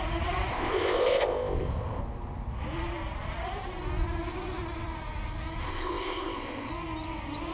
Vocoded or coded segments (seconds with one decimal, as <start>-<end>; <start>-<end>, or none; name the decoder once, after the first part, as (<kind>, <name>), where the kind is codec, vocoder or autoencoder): 0.5-2.0 (codec, ZipCodec); 5.6-6.7